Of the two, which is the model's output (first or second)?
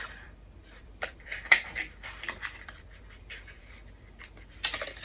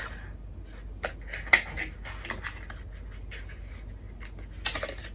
first